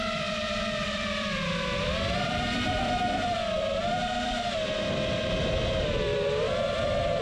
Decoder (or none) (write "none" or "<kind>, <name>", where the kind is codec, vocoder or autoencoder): vocoder, BigVGAN v2